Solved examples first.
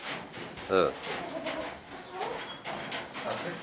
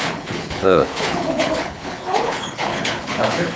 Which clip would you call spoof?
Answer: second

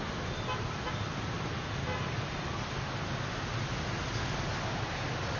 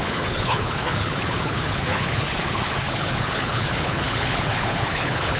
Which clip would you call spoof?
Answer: second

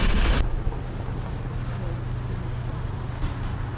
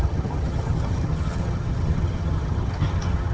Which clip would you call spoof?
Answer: second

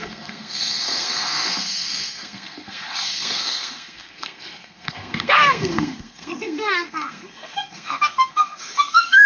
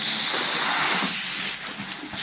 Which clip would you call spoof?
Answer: first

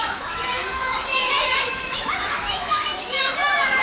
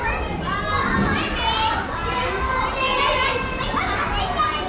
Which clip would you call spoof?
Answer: first